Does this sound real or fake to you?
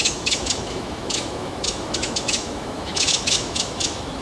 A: fake